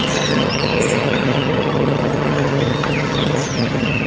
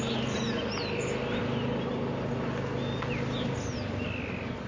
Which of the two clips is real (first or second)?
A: second